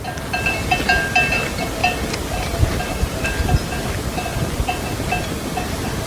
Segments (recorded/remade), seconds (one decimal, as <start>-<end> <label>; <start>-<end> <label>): 0.0-6.1 recorded